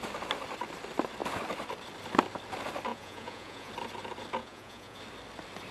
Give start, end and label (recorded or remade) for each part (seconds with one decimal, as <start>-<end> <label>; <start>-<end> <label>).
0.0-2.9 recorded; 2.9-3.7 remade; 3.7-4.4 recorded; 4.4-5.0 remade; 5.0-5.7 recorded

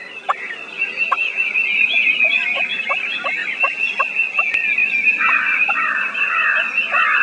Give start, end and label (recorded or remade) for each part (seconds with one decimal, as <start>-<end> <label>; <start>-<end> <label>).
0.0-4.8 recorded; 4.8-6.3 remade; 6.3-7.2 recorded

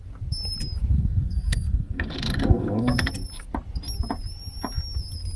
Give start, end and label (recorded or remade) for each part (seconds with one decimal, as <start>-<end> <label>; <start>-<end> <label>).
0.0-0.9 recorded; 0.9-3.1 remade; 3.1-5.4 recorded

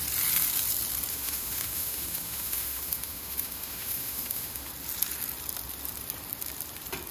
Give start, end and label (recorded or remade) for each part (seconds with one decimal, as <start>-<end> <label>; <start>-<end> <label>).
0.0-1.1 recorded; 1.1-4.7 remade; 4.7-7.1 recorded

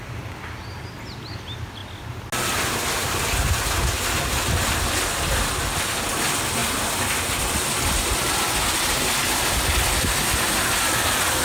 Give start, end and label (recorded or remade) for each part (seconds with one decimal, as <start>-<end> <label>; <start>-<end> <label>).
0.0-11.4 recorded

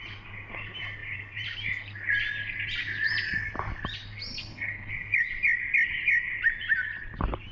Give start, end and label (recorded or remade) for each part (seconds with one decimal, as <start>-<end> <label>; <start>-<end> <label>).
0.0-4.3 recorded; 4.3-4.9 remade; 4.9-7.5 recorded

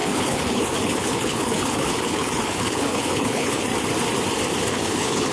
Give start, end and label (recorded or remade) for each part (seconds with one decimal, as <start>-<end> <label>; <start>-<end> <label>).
0.0-3.7 remade; 3.7-4.7 recorded; 4.7-5.3 remade